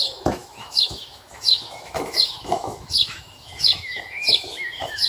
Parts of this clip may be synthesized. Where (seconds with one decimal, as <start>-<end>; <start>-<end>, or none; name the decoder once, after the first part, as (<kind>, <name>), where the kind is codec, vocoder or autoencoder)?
0.0-5.1 (autoencoder, DAC-VAE)

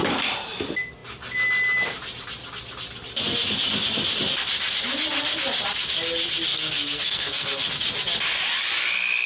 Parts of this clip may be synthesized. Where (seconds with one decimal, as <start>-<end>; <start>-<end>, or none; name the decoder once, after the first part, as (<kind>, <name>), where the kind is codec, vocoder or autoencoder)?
6.5-7.7 (codec, SNAC)

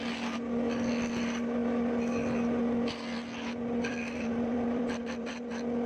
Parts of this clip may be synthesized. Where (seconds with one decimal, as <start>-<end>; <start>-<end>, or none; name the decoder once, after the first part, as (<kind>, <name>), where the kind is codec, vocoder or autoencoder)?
3.9-5.5 (vocoder, BigVGAN v2)

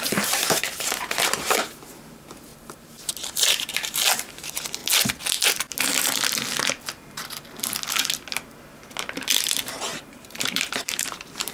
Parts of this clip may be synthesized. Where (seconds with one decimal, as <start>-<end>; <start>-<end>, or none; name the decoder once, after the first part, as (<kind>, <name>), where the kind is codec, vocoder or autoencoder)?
0.0-4.8 (vocoder, BigVGAN v2); 9.6-11.5

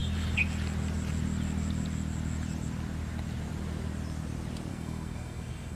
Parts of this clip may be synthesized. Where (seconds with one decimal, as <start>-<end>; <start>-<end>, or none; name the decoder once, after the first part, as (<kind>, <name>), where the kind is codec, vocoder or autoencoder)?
4.7-5.8 (codec, SNAC)

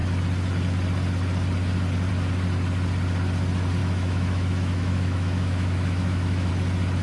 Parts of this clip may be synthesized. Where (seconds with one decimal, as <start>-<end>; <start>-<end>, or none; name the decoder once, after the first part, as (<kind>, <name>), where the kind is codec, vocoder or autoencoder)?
3.8-6.5 (autoencoder, DAC-VAE)